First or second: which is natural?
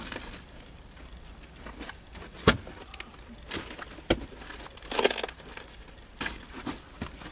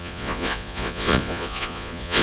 first